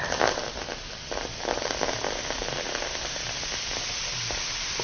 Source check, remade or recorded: recorded